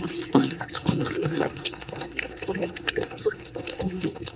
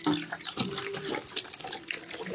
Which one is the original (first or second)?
second